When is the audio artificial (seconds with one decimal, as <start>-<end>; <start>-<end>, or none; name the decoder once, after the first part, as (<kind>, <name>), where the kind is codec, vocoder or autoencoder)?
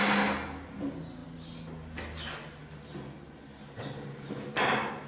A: none